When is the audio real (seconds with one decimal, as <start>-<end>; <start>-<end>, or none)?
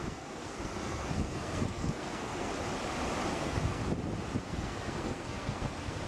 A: 2.5-3.3; 3.8-4.4